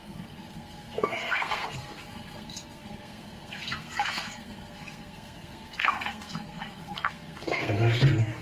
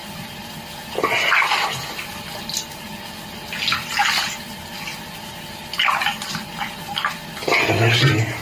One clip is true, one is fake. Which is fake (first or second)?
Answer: first